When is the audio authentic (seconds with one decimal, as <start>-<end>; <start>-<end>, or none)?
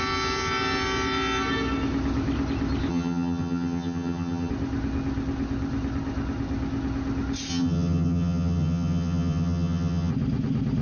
0.0-2.9; 4.5-7.5; 10.1-10.8